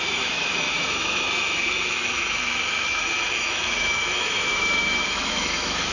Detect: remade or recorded remade